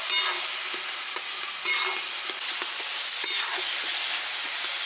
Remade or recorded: recorded